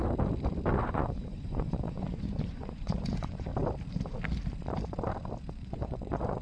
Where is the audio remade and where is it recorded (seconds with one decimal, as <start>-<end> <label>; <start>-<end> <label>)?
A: 0.0-0.8 recorded; 0.8-3.5 remade; 3.5-5.5 recorded; 5.5-6.4 remade